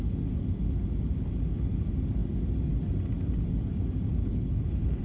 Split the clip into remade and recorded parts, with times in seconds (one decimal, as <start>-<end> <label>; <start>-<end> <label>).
0.0-4.2 recorded; 4.2-5.0 remade